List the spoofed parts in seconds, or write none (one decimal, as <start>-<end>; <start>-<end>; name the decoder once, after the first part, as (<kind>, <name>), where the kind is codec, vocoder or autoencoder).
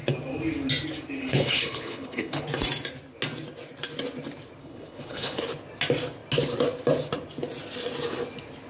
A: 1.3-2.4 (codec, HILCodec); 4.6-5.4